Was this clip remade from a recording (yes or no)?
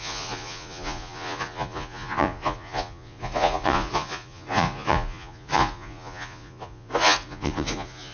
yes